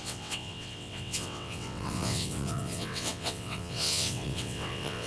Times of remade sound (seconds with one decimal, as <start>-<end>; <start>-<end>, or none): 0.0-5.1